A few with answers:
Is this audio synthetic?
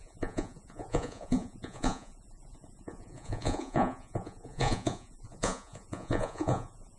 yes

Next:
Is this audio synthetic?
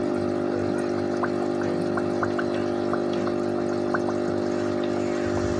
no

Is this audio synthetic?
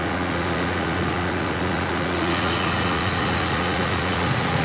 yes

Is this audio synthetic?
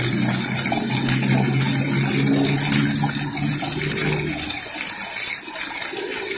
no